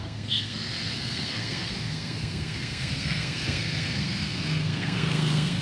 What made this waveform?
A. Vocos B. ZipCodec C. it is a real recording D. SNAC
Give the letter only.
D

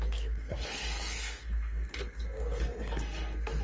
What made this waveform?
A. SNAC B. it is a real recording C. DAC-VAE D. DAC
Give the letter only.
A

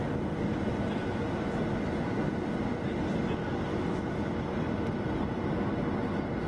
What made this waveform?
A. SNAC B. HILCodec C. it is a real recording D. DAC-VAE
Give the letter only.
C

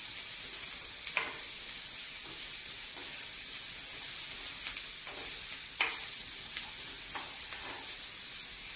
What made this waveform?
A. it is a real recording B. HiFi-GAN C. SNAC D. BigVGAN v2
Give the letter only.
A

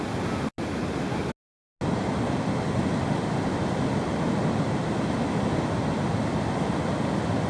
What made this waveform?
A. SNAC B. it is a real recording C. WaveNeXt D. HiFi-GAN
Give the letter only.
B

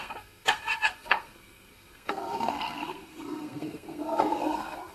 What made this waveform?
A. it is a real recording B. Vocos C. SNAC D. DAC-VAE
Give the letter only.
C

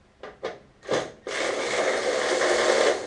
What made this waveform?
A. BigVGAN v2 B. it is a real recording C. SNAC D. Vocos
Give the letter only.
B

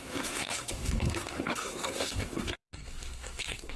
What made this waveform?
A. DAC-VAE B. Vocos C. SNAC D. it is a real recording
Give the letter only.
C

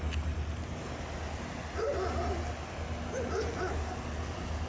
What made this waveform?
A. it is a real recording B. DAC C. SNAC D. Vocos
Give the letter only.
A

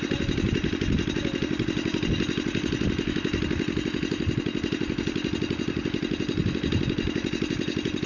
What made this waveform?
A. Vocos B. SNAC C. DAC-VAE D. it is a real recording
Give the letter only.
D